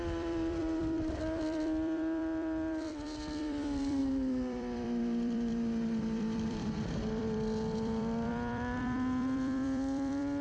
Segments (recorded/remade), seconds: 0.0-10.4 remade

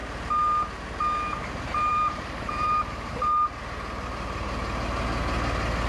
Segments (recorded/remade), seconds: 0.0-1.9 recorded; 1.9-3.1 remade; 3.1-5.9 recorded

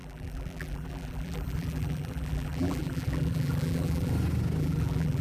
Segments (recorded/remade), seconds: 0.0-4.1 remade; 4.1-4.6 recorded; 4.6-5.2 remade